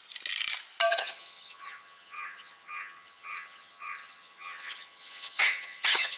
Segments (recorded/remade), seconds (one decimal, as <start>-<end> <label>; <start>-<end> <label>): 0.0-0.9 recorded; 0.9-6.2 remade